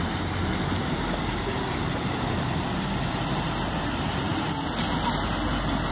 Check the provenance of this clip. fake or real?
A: real